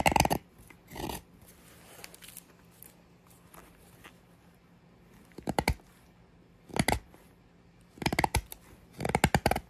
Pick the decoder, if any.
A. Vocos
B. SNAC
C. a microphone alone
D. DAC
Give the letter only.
C